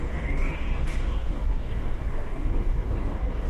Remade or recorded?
remade